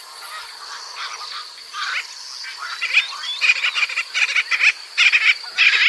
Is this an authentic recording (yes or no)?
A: yes